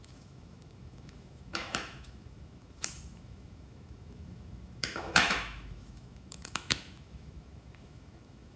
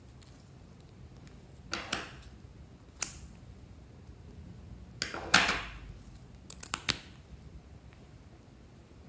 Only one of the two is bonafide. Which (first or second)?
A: second